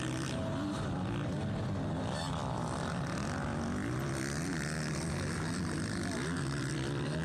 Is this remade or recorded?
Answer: recorded